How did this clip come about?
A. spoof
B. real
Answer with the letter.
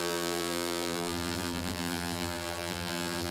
A